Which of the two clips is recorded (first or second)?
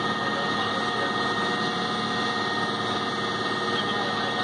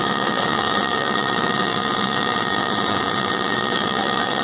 first